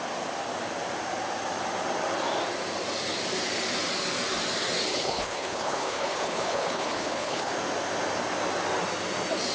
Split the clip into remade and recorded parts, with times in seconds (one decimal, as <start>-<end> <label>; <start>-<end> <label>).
0.0-4.9 recorded; 4.9-7.5 remade; 7.5-9.5 recorded